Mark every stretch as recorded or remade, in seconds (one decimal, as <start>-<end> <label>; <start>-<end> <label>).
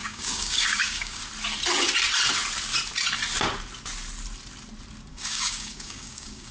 0.0-1.2 remade; 1.2-5.1 recorded; 5.1-6.5 remade